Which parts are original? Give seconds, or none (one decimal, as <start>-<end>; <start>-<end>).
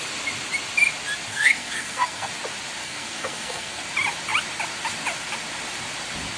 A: 0.0-1.3; 2.3-2.8; 3.8-6.4